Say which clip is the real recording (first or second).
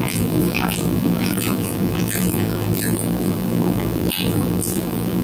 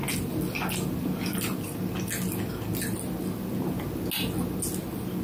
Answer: second